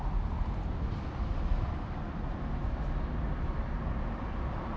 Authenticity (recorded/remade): recorded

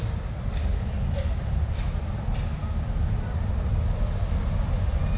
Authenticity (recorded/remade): recorded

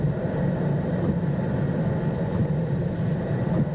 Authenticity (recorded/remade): recorded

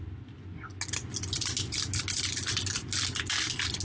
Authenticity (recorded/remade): recorded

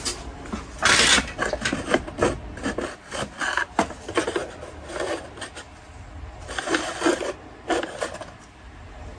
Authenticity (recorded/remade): recorded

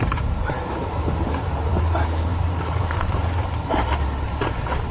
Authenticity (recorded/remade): remade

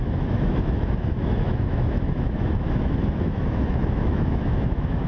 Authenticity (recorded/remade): remade